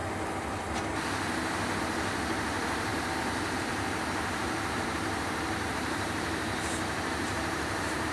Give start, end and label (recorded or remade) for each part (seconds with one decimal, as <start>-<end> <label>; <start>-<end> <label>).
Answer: 0.0-2.9 recorded; 2.9-8.1 remade